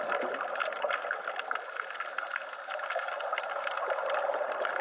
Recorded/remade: recorded